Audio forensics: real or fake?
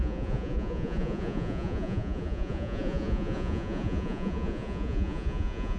fake